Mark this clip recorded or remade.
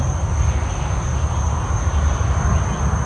recorded